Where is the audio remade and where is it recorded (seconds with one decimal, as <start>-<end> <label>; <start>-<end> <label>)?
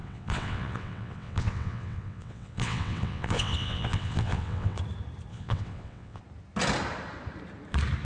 0.0-4.8 remade; 4.8-5.3 recorded; 5.3-6.2 remade; 6.2-8.0 recorded